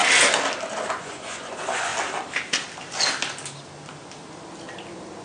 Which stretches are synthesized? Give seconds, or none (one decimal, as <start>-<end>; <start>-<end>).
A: 0.9-1.9